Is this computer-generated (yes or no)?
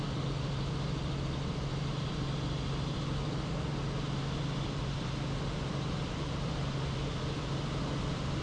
yes